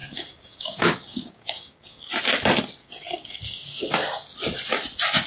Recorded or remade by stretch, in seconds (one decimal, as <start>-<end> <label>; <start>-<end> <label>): 0.0-2.1 remade; 2.1-2.8 recorded; 2.8-3.9 remade; 3.9-5.3 recorded